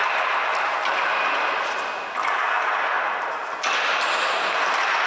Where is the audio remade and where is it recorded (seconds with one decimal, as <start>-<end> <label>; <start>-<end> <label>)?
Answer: 0.0-5.1 recorded